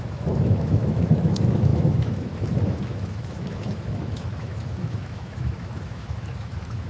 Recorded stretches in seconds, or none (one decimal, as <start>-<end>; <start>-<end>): none